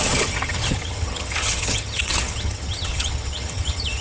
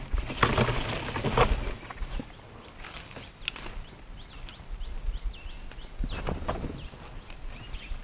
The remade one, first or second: first